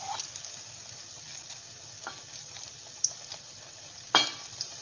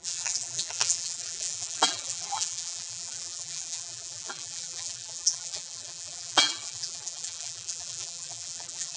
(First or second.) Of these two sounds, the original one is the first